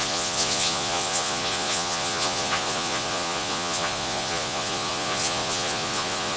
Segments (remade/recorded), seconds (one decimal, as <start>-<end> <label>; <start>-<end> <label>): 0.0-6.4 remade